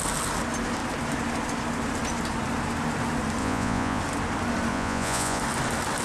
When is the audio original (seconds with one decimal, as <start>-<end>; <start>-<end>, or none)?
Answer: 0.0-3.4; 4.0-4.7; 5.4-6.0